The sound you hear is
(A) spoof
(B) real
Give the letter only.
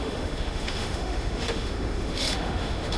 A